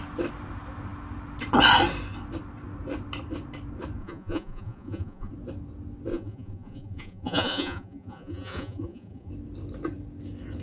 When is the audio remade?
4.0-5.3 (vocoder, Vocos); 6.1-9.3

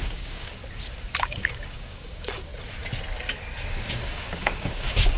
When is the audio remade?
0.0-0.6 (codec, DAC); 1.2-2.5; 3.9-5.2

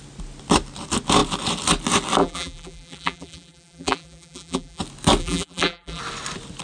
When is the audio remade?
2.2-4.8 (vocoder, BigVGAN v2); 5.2-6.0

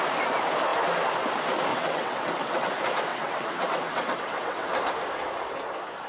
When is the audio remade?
1.7-2.7 (vocoder, WaveNeXt); 3.1-4.7